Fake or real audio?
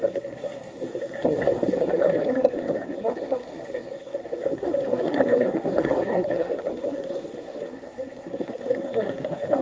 fake